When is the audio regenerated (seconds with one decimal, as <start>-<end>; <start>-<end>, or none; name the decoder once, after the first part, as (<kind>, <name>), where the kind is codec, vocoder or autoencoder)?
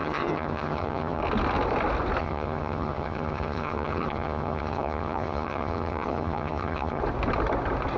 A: 0.0-1.2 (vocoder, HiFi-GAN); 2.2-7.0